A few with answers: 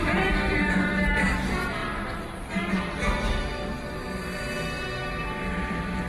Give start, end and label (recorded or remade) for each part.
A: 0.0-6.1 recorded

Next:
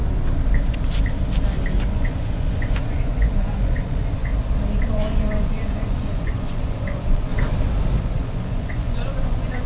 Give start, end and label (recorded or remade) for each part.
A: 0.0-1.9 recorded; 1.9-4.3 remade; 4.3-4.9 recorded; 4.9-7.3 remade; 7.3-8.0 recorded; 8.0-9.7 remade